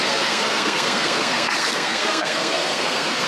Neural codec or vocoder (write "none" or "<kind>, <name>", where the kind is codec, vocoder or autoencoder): codec, SNAC